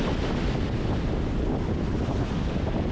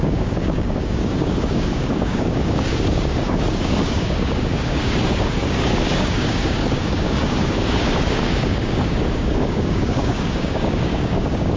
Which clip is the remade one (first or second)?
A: second